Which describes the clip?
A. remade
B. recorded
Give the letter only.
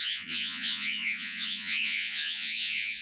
A